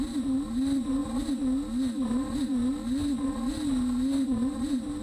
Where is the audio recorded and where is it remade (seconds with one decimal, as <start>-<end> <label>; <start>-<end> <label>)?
0.0-5.0 recorded